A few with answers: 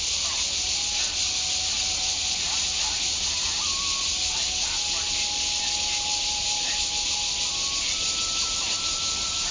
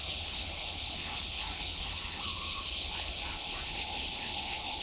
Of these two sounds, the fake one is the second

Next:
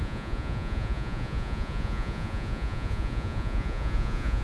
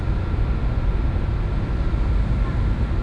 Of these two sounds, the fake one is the first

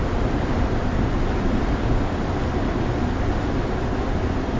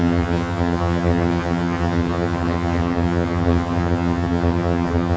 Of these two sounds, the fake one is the second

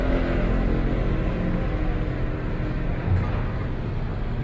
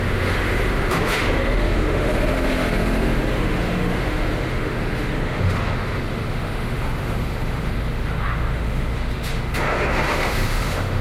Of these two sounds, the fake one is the second